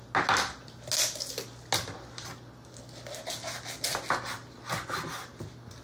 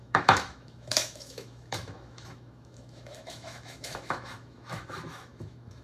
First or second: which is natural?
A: first